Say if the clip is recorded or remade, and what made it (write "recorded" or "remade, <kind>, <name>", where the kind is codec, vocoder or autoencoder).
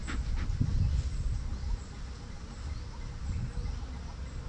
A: recorded